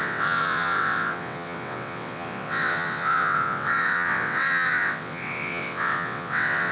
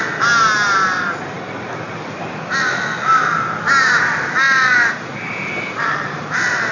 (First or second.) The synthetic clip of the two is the first